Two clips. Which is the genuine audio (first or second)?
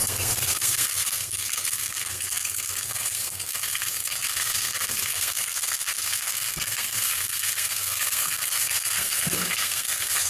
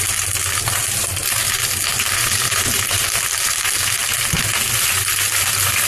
second